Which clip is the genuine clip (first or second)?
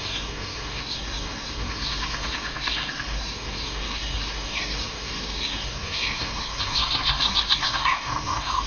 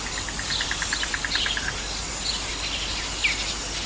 second